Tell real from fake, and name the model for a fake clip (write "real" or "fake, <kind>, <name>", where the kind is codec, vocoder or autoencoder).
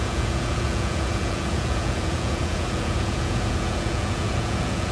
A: fake, vocoder, Vocos